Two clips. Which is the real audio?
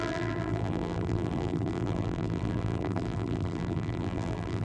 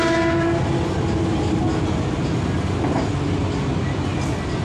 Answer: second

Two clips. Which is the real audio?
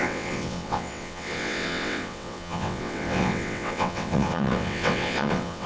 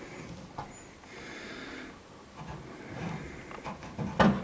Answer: second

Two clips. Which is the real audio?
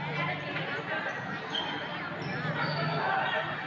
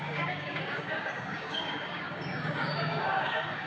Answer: first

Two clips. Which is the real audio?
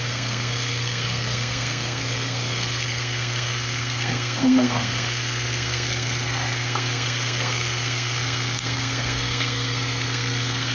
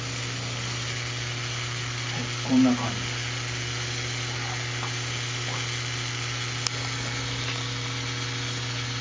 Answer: second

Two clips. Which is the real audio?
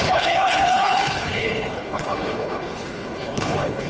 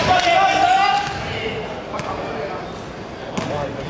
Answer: second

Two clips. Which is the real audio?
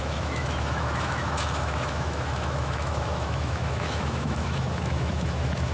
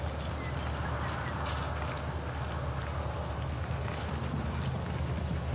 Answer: second